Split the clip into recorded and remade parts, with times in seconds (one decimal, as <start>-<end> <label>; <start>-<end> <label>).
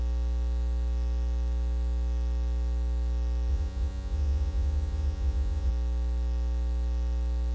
0.0-3.5 recorded; 3.5-5.7 remade; 5.7-7.5 recorded